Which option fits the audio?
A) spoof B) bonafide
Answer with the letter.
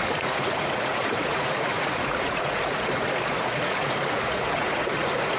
A